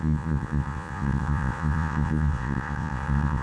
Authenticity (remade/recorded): remade